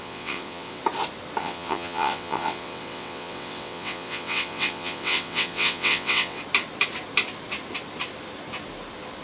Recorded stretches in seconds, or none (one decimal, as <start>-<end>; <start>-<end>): 0.8-1.4; 6.4-9.2